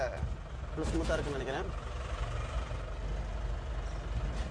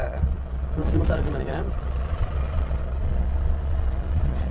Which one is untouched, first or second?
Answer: first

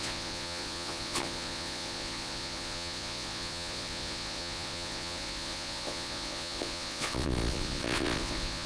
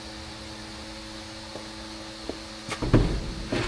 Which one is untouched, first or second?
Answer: second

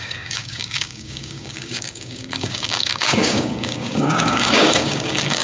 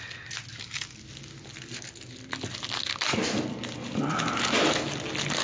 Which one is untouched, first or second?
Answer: second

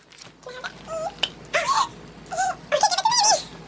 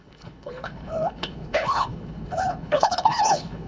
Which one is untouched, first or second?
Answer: first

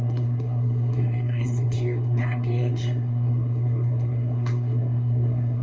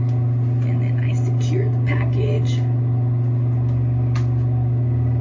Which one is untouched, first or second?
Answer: second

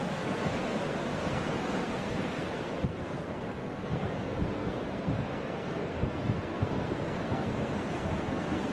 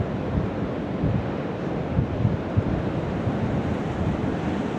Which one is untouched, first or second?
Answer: second